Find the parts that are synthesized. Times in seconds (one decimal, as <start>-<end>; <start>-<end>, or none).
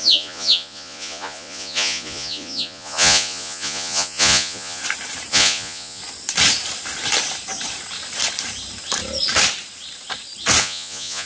0.0-4.8; 5.3-6.0; 10.6-11.3